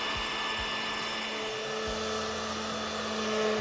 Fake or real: real